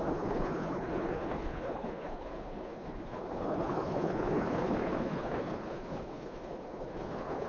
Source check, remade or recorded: remade